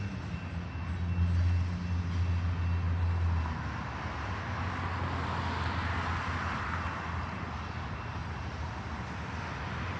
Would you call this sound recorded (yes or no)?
yes